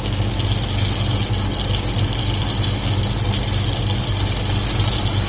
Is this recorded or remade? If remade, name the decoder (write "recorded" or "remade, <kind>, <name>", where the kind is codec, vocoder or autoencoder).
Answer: recorded